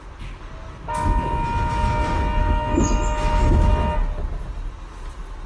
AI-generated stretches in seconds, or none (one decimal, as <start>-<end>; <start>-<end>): 2.4-3.7